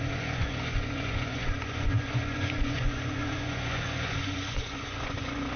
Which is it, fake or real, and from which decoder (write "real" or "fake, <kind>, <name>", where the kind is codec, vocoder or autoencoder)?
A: fake, vocoder, Vocos